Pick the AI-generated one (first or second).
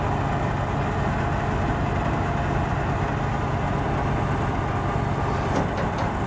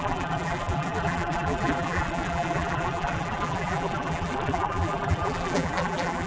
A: second